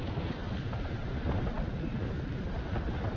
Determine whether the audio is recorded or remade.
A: recorded